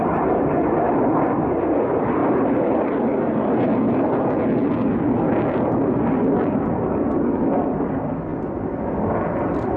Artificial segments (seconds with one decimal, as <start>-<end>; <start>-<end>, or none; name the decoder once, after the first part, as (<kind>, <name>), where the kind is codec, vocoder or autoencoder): 2.2-3.6 (vocoder, BigVGAN v2); 8.3-8.9